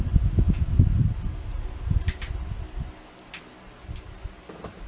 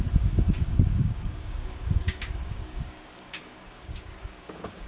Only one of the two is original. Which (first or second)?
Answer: first